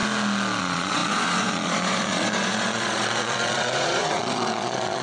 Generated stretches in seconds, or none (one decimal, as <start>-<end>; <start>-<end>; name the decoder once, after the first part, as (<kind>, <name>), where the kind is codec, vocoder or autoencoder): 0.6-5.0 (vocoder, Vocos)